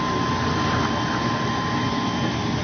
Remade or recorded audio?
recorded